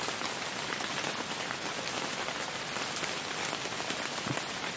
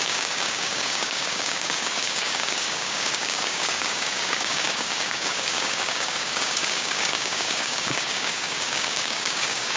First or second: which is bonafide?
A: first